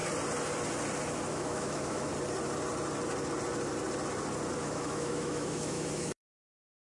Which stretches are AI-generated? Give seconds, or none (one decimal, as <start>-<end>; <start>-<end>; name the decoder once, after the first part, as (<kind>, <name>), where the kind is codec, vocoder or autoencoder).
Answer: 1.3-2.1 (autoencoder, DAC-VAE); 4.6-6.9